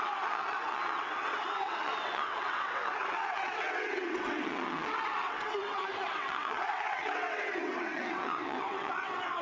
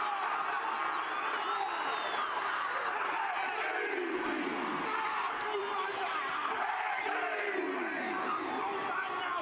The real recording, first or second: second